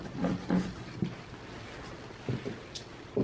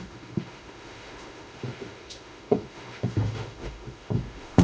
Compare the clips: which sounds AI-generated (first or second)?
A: second